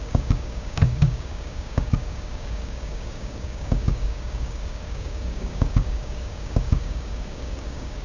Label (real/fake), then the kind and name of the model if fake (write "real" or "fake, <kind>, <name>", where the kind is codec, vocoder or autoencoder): fake, codec, DAC